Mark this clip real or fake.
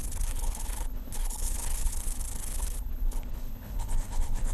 fake